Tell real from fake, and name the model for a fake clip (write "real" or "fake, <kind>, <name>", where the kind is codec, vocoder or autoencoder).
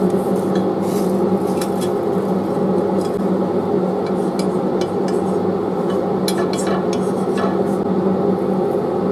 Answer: real